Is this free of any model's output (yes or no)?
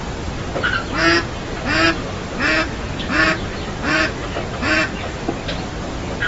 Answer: yes